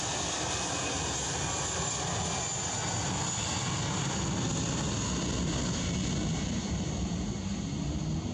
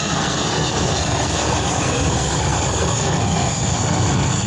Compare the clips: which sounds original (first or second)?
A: first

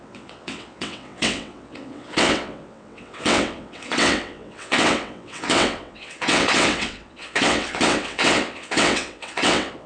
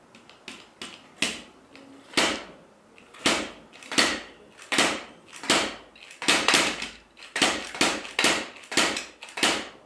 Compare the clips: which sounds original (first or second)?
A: second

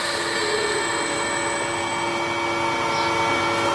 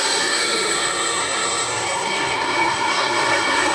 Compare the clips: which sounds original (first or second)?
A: first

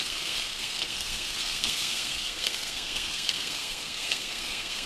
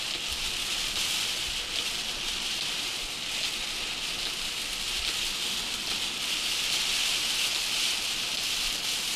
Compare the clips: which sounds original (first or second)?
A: second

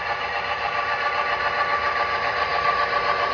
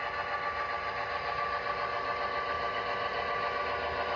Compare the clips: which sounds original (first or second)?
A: second